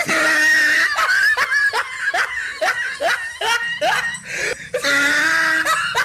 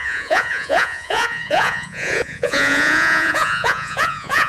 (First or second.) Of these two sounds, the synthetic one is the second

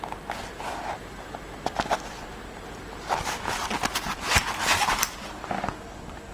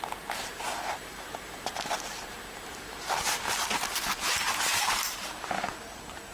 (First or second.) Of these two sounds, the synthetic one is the second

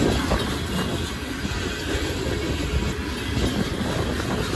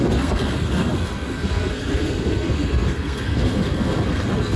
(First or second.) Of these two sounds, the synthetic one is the second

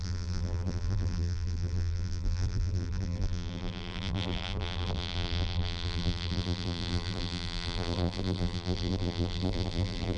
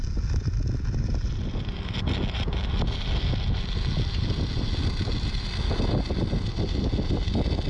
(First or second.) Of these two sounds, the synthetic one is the first